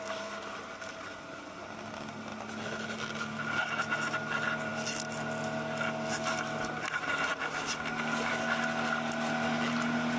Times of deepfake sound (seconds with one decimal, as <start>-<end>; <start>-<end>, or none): none